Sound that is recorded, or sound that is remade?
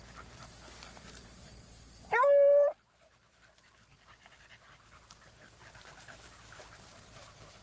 remade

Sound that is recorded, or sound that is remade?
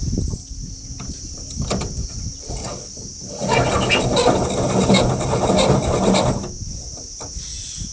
recorded